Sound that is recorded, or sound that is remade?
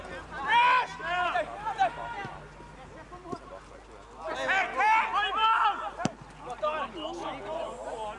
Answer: recorded